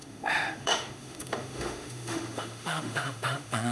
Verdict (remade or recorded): remade